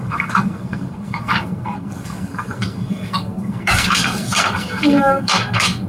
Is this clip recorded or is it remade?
remade